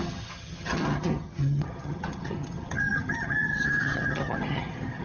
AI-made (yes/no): yes